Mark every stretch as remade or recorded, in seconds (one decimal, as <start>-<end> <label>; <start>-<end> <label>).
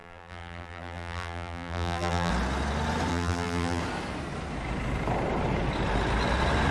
0.0-2.3 remade; 2.3-3.1 recorded; 3.1-3.8 remade; 3.8-6.7 recorded